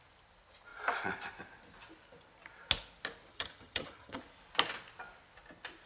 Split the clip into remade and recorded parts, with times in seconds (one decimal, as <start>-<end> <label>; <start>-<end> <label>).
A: 0.0-3.3 recorded; 3.3-4.2 remade; 4.2-5.9 recorded